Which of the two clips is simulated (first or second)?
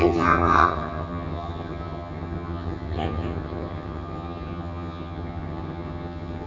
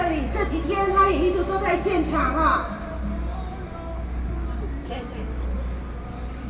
first